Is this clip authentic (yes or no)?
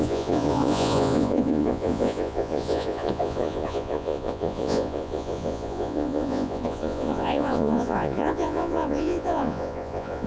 no